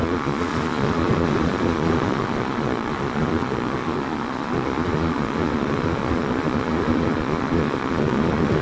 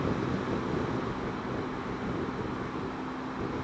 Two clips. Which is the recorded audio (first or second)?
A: second